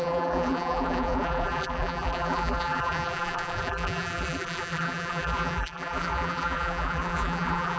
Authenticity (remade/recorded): remade